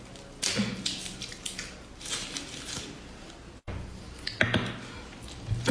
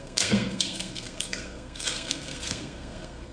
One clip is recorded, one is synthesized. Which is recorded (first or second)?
first